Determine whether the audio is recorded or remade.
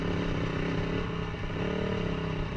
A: recorded